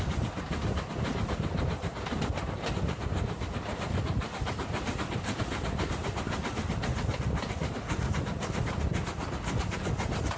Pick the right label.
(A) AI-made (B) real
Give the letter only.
B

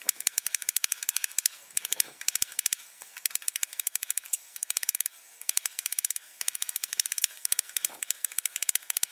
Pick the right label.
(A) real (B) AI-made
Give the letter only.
B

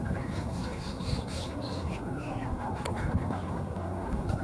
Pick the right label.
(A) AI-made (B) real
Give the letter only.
A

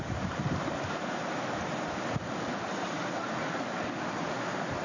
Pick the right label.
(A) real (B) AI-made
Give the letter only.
A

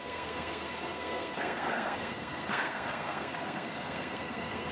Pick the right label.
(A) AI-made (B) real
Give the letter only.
A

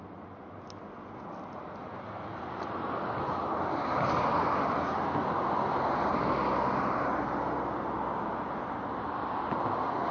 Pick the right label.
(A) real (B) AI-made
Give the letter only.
A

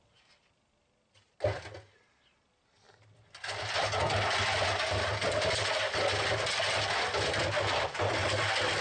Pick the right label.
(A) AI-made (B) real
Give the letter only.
B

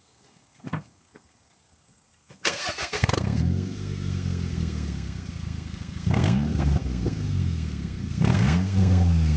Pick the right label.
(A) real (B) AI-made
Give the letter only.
B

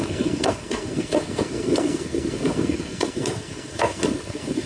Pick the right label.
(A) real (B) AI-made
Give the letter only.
B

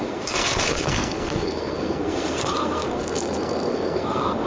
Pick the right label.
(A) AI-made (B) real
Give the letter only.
A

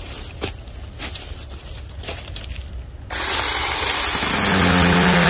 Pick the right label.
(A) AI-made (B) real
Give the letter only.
B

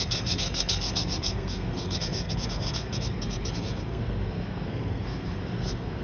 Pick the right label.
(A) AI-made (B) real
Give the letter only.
A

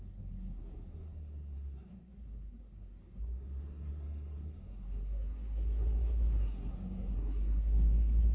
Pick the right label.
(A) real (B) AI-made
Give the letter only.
B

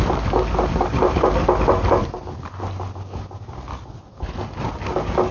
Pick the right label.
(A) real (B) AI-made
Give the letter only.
A